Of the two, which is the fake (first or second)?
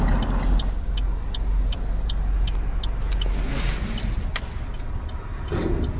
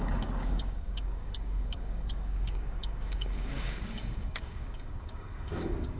second